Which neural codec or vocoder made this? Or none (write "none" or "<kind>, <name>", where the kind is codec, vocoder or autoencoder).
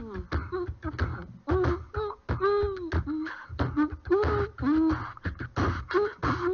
none